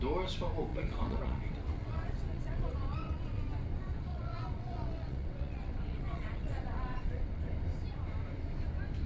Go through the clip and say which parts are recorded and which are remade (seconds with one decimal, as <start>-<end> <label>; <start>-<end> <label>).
0.0-0.7 recorded; 0.7-3.4 remade; 3.4-4.1 recorded; 4.1-7.4 remade; 7.4-9.1 recorded